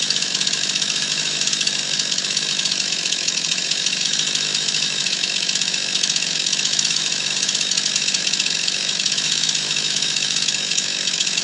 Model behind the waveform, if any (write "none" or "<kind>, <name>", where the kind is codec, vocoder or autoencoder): autoencoder, DAC-VAE